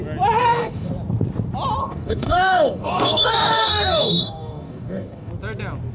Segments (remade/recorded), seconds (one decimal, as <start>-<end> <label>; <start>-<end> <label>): 0.0-0.4 recorded; 0.4-0.9 remade; 0.9-1.8 recorded; 1.8-5.3 remade; 5.3-5.9 recorded